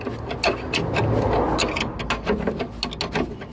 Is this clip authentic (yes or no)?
yes